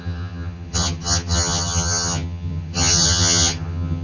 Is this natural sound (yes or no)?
no